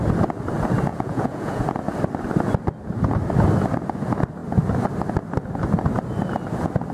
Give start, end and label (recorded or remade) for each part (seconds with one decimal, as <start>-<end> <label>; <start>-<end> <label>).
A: 0.0-0.9 recorded; 0.9-1.6 remade; 1.6-6.9 recorded